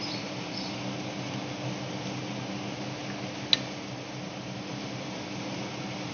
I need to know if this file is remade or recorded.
recorded